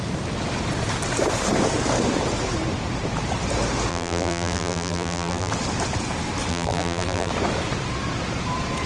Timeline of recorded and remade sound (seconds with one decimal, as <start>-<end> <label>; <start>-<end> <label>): 0.0-3.9 recorded; 3.9-5.5 remade; 5.5-6.5 recorded; 6.5-7.3 remade; 7.3-8.9 recorded